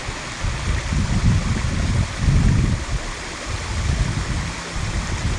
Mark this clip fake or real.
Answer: real